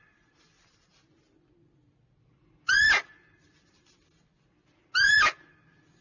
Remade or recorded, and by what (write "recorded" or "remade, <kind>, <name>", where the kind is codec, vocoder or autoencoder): recorded